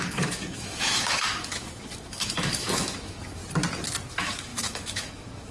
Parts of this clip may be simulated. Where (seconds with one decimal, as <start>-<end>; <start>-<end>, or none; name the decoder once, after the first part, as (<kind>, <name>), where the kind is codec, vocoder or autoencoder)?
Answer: 0.0-3.4 (autoencoder, DAC-VAE); 4.1-5.5